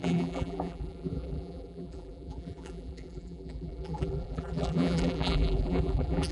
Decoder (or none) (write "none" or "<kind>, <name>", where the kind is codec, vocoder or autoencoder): vocoder, BigVGAN v2